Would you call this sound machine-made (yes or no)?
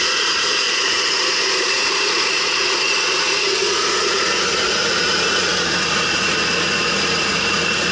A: yes